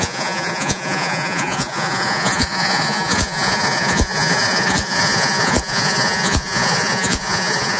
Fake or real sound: fake